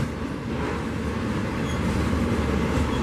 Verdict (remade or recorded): recorded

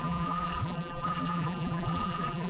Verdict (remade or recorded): remade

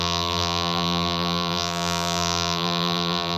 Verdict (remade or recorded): remade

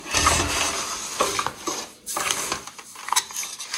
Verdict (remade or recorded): recorded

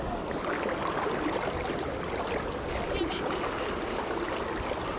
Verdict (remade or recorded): recorded